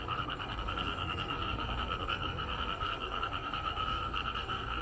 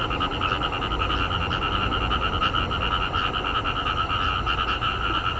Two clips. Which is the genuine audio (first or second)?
second